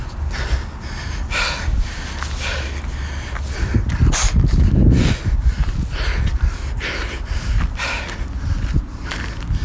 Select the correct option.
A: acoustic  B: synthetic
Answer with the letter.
A